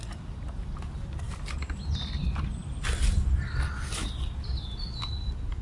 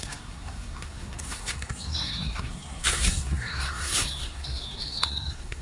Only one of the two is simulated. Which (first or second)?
second